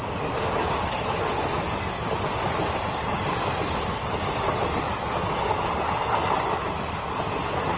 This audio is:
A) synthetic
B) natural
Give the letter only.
B